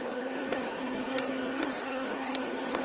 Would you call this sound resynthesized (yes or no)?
yes